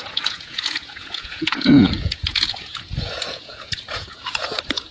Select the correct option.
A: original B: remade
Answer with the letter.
B